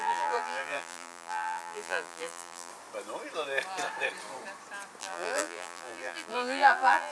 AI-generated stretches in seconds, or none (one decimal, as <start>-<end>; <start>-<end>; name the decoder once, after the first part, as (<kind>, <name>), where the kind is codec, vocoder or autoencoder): 0.0-2.7 (vocoder, BigVGAN v2); 5.0-7.1